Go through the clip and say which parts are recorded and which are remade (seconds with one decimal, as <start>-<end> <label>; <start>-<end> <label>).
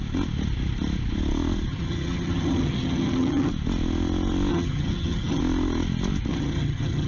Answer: 0.0-1.7 recorded; 1.7-3.5 remade; 3.5-4.5 recorded; 4.5-5.4 remade; 5.4-6.3 recorded; 6.3-7.1 remade